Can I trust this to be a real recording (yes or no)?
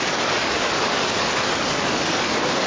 no